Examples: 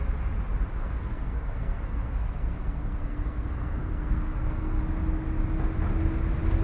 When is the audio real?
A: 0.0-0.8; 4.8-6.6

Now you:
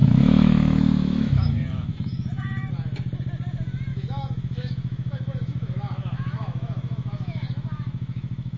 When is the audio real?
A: 2.7-3.9

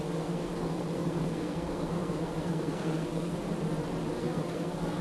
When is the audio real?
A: 3.4-4.2